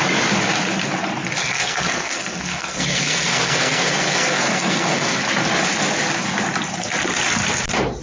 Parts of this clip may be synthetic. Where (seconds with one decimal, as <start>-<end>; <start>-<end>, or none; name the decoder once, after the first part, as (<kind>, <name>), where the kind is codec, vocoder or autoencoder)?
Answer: 1.4-5.2 (codec, SNAC)